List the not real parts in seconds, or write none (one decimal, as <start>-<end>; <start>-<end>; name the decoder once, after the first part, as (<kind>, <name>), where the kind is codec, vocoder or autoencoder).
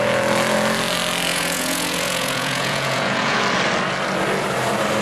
1.3-3.4 (vocoder, Vocos)